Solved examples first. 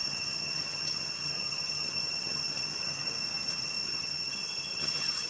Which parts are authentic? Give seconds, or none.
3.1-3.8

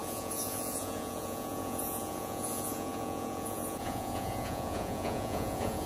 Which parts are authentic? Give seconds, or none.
none